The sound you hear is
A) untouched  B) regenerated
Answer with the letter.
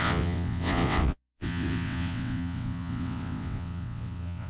B